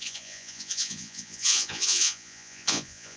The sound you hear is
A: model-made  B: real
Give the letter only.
A